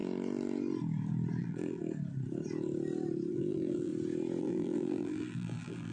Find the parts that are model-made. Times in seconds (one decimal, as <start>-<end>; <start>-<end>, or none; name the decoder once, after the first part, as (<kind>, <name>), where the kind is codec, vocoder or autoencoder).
1.4-1.8 (vocoder, BigVGAN v2); 3.3-3.9; 4.4-5.9